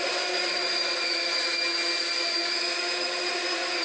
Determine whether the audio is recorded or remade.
recorded